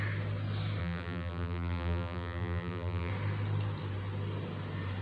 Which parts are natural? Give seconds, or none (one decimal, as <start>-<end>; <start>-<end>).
0.0-0.8; 3.1-5.0

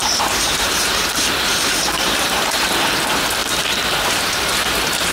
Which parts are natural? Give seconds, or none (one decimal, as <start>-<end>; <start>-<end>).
2.6-3.4; 4.4-5.1